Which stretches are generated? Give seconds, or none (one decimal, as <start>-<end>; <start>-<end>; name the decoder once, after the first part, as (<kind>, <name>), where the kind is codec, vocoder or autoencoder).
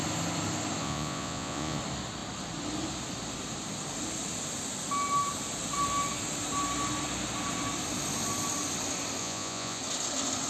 0.8-1.8 (vocoder, Vocos); 9.2-9.8